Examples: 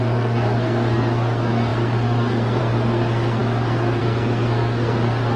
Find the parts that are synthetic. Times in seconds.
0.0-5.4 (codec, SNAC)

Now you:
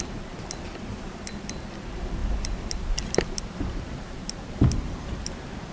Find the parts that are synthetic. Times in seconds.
none